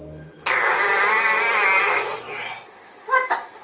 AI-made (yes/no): no